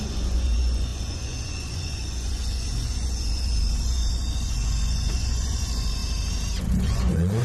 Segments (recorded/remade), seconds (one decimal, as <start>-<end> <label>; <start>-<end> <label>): 0.0-6.0 remade; 6.0-6.6 recorded; 6.6-7.4 remade